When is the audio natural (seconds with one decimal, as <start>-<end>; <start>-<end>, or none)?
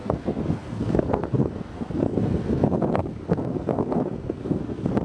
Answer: none